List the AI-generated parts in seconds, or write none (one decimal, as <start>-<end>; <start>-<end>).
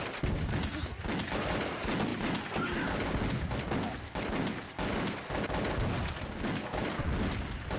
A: none